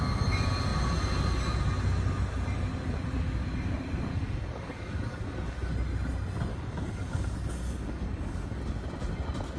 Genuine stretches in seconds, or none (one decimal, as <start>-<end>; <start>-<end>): 0.0-4.1; 5.7-6.5; 8.6-9.6